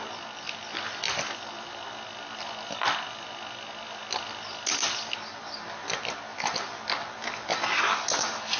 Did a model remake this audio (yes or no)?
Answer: no